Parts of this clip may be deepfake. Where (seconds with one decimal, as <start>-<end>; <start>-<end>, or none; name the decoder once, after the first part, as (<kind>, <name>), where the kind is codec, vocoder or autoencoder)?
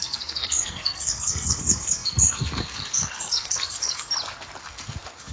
0.0-4.1 (codec, SNAC); 4.6-5.3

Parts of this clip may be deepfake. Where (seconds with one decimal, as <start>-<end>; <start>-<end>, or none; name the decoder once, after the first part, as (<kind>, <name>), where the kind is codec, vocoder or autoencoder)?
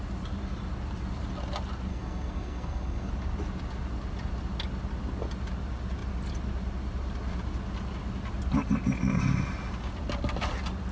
1.9-3.1 (codec, SNAC)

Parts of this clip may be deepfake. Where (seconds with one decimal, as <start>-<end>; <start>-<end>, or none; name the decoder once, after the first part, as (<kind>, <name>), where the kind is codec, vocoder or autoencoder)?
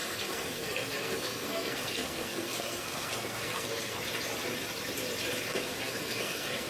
0.0-4.0 (codec, SNAC); 5.5-6.7